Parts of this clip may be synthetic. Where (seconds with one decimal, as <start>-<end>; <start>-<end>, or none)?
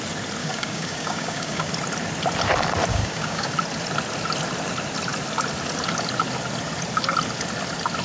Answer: 0.4-1.7; 2.9-3.5